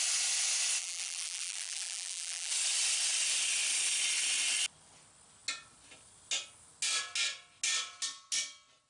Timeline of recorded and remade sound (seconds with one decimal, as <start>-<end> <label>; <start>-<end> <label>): 0.0-0.8 recorded; 0.8-2.5 remade; 2.5-8.9 recorded